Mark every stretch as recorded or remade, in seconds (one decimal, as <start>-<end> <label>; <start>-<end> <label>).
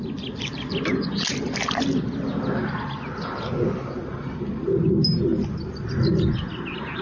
0.0-7.0 recorded